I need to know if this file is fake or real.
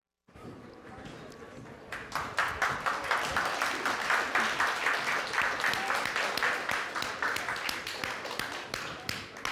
real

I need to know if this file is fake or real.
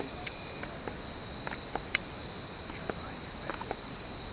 real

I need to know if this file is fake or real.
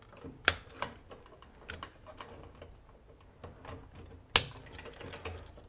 real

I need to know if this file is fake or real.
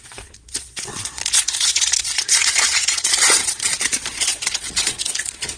fake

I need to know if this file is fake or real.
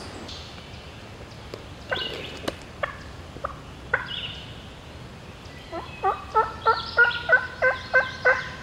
real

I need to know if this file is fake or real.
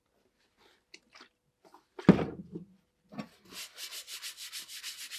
real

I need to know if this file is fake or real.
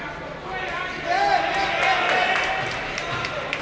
real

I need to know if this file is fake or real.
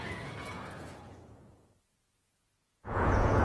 fake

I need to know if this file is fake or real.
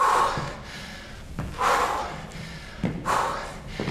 real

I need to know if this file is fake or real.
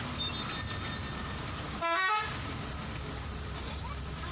real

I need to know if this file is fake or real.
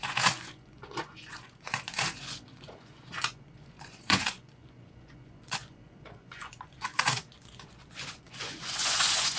fake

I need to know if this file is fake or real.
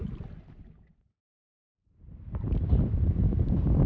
real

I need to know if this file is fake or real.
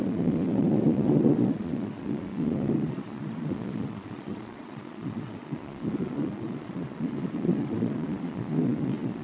fake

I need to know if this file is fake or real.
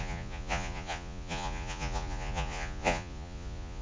fake